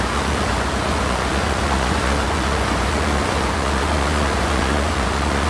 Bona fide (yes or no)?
no